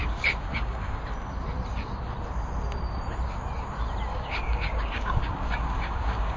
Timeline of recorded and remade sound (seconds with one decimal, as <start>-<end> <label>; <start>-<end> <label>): 0.0-1.0 remade; 1.0-4.1 recorded; 4.1-6.4 remade